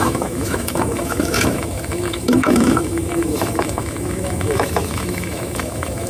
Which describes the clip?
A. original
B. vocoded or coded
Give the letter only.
B